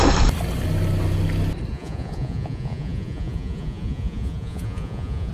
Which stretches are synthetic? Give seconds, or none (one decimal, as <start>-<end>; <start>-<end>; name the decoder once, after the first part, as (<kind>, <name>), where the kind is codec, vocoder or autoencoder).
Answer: 1.7-5.3 (vocoder, Vocos)